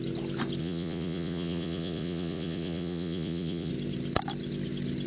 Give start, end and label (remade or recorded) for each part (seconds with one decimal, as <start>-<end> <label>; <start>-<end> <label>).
0.0-0.6 recorded; 0.6-3.7 remade; 3.7-5.1 recorded